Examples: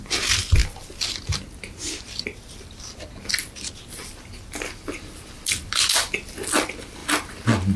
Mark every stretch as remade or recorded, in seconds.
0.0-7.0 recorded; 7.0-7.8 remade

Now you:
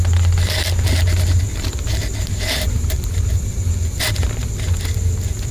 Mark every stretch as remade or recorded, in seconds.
0.0-1.5 recorded; 1.5-3.4 remade; 3.4-5.5 recorded

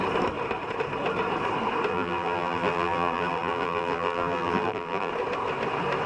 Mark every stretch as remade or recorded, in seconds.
0.0-1.9 recorded; 1.9-5.1 remade; 5.1-6.1 recorded